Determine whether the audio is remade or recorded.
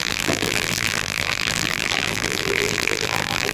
remade